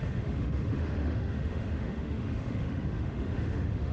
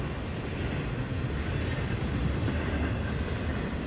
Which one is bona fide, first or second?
second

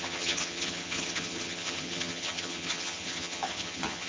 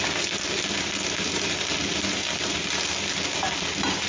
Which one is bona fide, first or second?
second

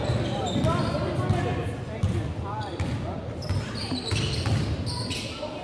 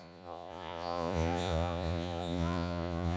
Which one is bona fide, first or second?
first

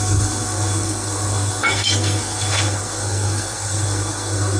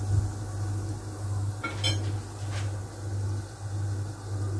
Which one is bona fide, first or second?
second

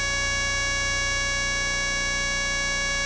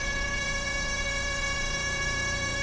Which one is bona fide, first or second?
first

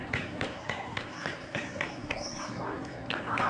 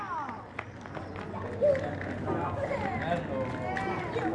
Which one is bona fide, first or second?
second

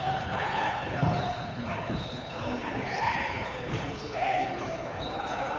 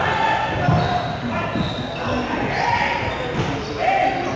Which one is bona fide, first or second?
second